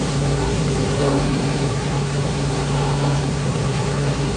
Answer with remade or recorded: remade